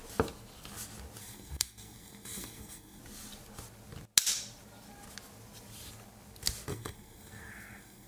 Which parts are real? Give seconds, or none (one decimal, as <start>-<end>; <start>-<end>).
0.0-1.2; 3.0-6.7